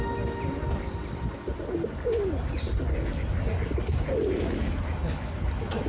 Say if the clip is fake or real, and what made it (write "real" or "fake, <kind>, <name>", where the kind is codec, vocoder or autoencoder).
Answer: real